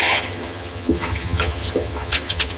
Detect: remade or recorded remade